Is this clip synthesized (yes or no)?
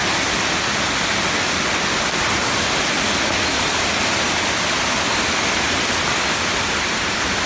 no